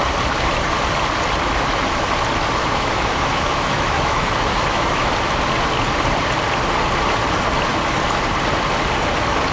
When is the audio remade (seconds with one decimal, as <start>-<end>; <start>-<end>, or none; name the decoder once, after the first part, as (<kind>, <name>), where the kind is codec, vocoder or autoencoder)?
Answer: 2.6-5.1 (autoencoder, DAC-VAE)